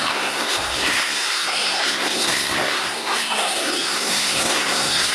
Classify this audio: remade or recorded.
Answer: remade